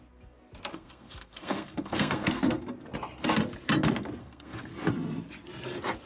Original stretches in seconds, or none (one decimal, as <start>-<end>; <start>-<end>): 0.0-0.7; 2.6-4.2; 4.7-6.1